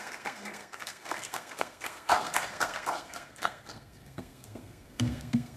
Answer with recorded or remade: remade